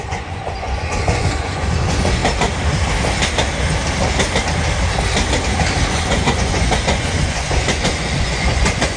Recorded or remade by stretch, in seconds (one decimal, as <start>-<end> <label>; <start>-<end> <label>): 0.0-2.2 remade; 2.2-5.9 recorded; 5.9-9.0 remade